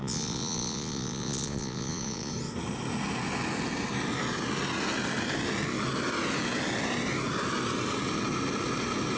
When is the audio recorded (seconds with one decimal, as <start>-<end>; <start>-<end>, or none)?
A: 2.3-9.2